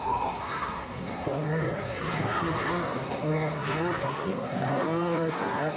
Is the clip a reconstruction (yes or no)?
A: yes